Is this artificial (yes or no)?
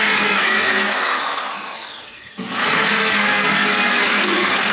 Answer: yes